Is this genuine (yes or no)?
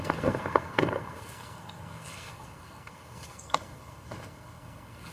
no